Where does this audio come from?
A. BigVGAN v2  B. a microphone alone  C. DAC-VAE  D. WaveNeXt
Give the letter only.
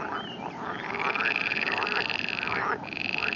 B